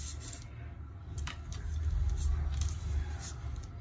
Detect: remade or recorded recorded